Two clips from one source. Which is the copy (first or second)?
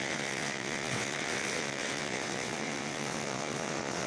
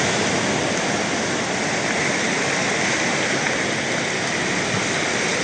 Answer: first